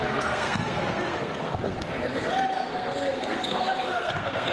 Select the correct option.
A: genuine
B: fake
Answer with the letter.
B